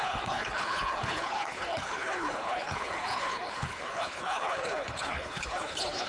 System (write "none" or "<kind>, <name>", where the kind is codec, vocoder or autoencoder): codec, HILCodec